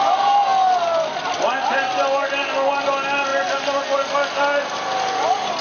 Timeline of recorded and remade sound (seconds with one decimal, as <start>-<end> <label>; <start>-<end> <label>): 0.0-5.6 recorded